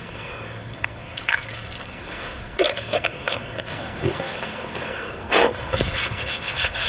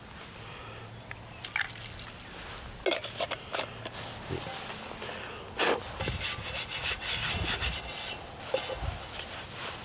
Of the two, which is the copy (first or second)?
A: first